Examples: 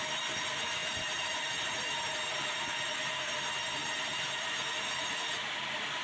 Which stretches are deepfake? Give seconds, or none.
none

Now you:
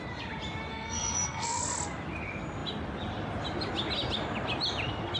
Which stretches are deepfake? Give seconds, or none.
0.7-1.6 (codec, SNAC)

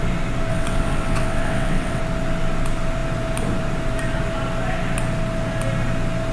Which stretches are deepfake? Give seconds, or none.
0.5-2.0 (vocoder, WaveNeXt)

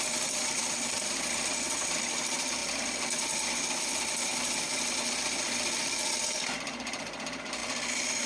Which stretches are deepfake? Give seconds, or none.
0.0-2.6 (vocoder, BigVGAN v2); 3.8-4.3; 5.8-7.6

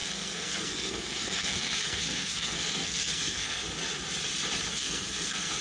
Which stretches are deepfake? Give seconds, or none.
0.0-3.6 (codec, SNAC); 4.7-5.6

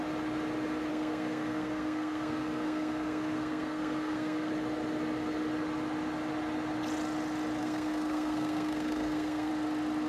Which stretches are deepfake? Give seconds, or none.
0.9-4.5 (codec, SNAC); 7.6-9.5